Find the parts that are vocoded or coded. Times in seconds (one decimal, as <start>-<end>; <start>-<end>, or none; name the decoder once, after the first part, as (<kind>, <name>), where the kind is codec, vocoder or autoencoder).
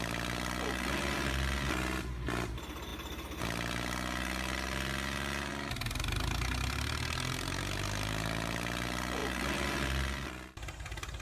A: none